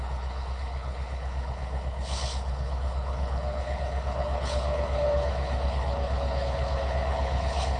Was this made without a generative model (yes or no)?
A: no